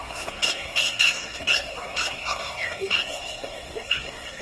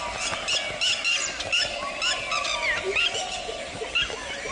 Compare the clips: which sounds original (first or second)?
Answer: second